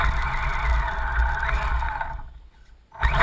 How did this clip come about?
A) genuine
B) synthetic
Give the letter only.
A